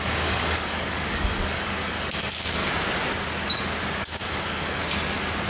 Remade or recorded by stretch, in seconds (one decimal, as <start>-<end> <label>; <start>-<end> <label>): 0.0-2.6 remade; 2.6-4.0 recorded; 4.0-4.8 remade; 4.8-5.5 recorded